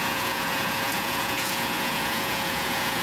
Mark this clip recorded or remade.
remade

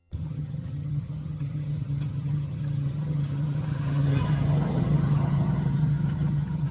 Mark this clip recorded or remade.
remade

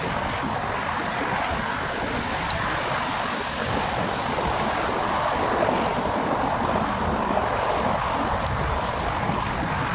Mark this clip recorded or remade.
recorded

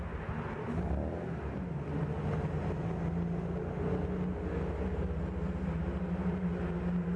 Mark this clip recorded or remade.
recorded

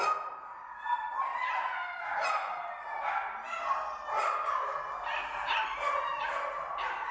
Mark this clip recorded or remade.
recorded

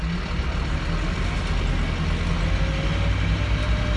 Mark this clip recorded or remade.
recorded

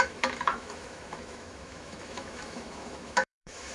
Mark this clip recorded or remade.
remade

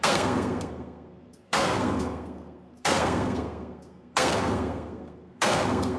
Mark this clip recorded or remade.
remade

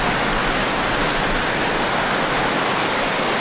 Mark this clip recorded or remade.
recorded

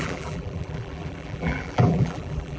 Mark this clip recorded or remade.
remade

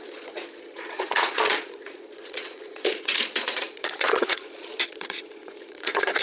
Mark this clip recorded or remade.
remade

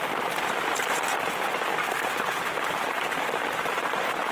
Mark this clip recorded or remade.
remade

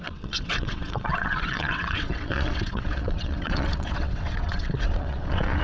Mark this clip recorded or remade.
remade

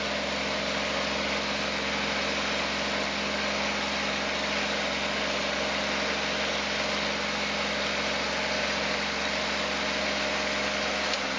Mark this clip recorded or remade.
recorded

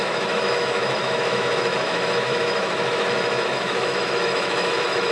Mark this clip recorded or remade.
remade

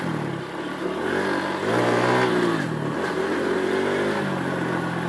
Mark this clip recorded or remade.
recorded